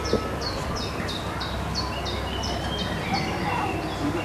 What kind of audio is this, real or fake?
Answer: real